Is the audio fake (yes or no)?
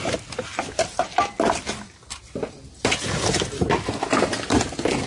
no